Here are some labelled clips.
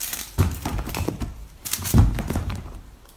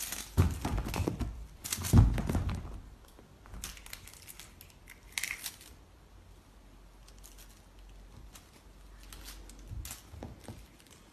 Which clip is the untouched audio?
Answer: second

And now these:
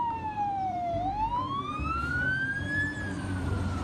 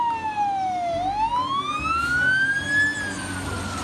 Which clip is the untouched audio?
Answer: second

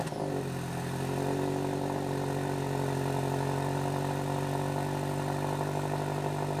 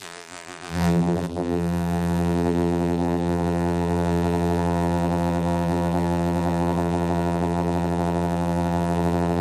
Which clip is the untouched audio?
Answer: first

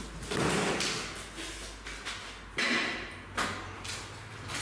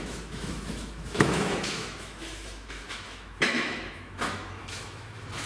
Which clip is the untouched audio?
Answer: first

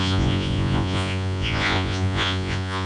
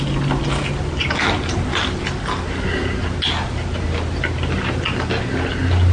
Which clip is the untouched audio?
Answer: second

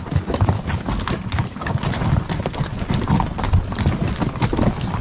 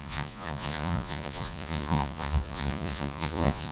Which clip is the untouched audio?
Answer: first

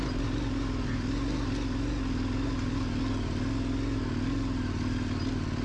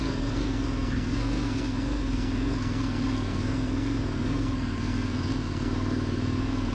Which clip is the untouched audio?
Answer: first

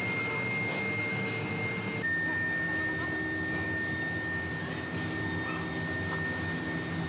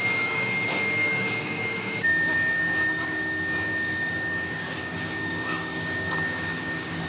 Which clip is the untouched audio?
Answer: first